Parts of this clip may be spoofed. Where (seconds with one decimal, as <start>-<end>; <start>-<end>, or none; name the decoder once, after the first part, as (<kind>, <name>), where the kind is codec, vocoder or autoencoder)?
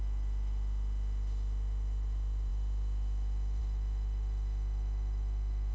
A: 0.0-5.7 (autoencoder, DAC-VAE)